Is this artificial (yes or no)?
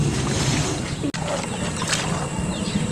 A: no